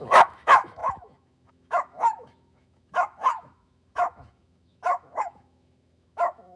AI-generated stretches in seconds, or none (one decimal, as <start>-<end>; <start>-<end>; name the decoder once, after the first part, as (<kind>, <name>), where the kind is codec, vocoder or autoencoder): 0.0-6.6 (autoencoder, DAC-VAE)